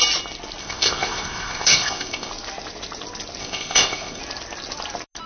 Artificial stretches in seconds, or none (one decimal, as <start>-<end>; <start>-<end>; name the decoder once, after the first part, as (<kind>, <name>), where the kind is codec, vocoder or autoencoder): 0.6-2.3 (codec, ZipCodec); 3.4-4.2